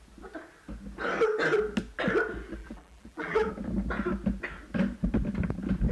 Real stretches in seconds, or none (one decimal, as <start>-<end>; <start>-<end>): 0.0-2.6; 3.5-5.9